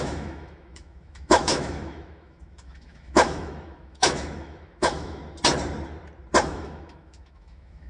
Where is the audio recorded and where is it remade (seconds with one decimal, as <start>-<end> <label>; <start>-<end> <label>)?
0.0-5.2 remade; 5.2-6.5 recorded; 6.5-7.9 remade